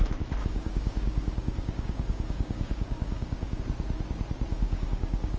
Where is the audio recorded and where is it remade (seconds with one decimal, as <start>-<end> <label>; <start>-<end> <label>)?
0.0-0.4 recorded; 0.4-3.6 remade; 3.6-4.5 recorded; 4.5-5.4 remade